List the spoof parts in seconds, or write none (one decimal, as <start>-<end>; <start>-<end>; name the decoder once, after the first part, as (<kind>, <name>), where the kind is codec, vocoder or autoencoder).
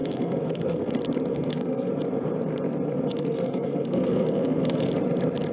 0.0-0.9 (codec, SNAC); 1.3-1.9; 3.1-4.9